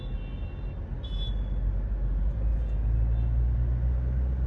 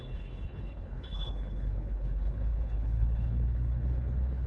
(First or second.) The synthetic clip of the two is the second